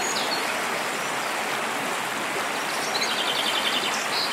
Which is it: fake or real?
real